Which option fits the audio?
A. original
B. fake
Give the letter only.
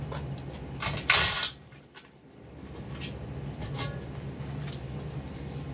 A